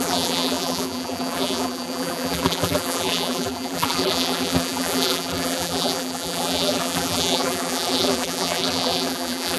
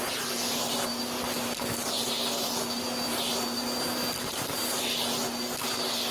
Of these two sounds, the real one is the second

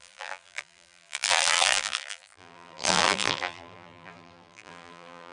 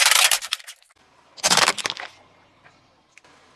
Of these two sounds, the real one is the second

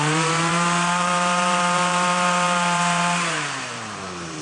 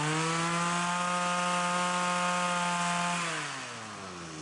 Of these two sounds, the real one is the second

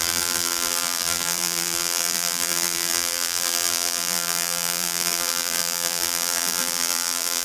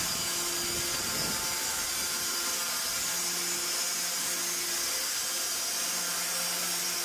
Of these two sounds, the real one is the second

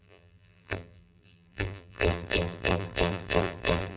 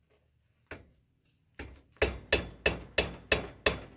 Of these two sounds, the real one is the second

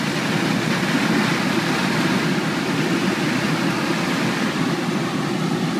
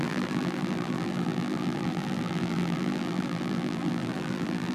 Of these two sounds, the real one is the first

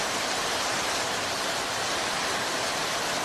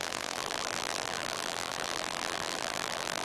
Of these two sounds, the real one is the first